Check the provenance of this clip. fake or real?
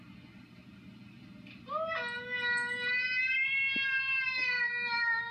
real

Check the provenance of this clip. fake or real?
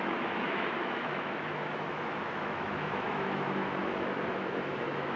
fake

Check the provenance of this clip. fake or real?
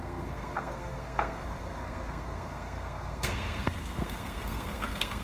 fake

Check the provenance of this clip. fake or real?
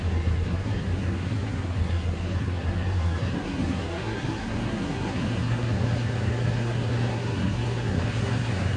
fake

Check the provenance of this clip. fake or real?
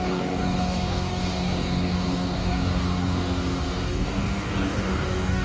fake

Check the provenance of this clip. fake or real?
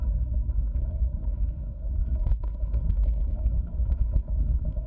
fake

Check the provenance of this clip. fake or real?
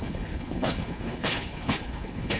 fake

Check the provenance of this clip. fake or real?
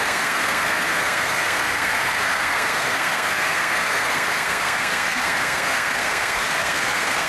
fake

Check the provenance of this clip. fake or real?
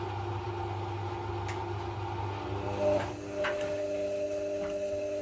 real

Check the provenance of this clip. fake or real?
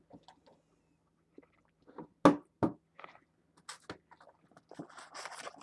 real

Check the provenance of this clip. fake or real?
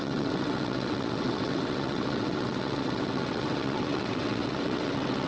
fake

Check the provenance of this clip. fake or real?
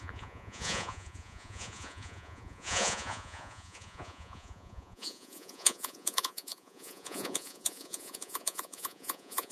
fake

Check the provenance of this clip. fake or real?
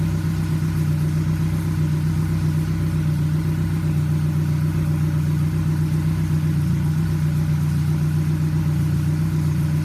real